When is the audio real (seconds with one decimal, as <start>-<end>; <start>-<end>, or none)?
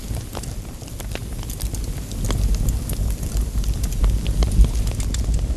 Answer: 0.0-5.6